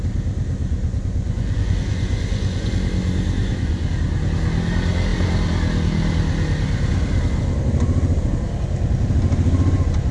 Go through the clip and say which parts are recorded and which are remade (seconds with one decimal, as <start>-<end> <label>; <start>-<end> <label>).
0.0-0.6 recorded; 0.6-2.7 remade; 2.7-3.4 recorded; 3.4-3.9 remade; 3.9-10.1 recorded